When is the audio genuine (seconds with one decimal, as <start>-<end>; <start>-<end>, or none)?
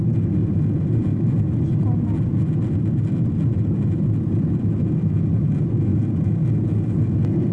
0.0-7.5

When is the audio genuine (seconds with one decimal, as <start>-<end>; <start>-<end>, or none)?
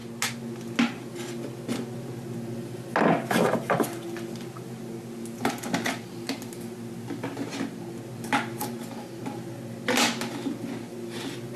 0.0-11.6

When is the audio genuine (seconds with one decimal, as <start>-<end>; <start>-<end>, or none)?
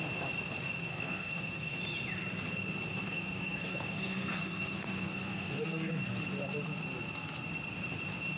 0.0-0.9; 1.8-2.9; 5.9-8.4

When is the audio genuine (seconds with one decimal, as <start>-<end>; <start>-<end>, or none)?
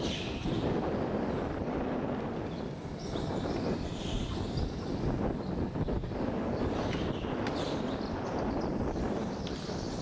0.0-10.0